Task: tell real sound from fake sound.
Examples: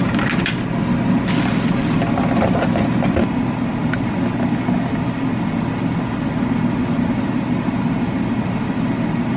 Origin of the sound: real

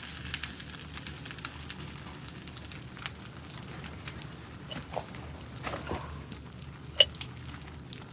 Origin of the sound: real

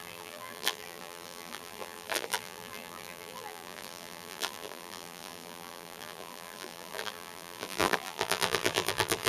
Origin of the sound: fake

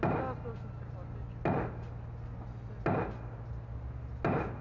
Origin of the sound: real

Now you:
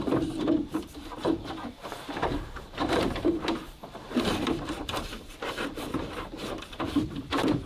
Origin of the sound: fake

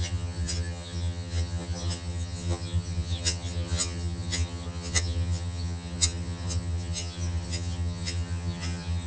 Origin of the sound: fake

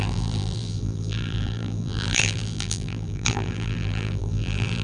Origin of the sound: fake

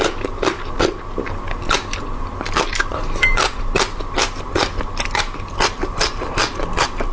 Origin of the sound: fake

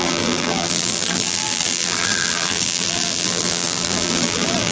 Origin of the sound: fake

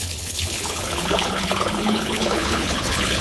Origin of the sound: fake